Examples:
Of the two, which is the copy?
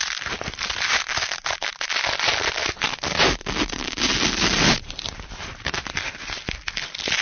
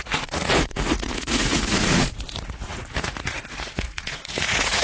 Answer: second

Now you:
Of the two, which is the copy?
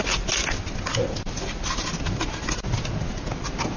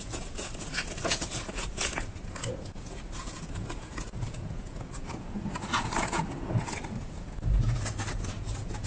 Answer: second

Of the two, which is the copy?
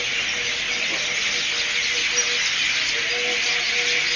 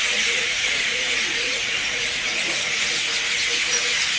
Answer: second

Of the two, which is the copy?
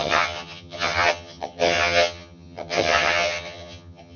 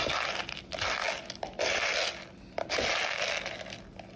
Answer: first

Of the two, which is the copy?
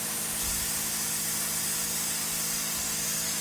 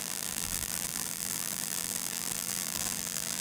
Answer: second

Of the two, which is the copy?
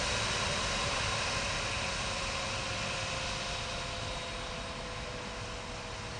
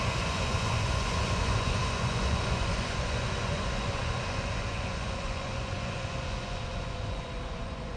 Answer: second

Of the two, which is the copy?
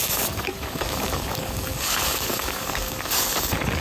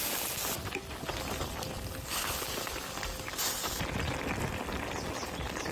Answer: first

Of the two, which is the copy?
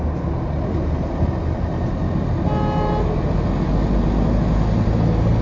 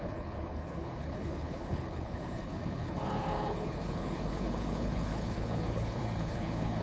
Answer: second